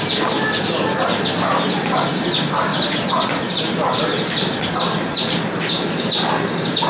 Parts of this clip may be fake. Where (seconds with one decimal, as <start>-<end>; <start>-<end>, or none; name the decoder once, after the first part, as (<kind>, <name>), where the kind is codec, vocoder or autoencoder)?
none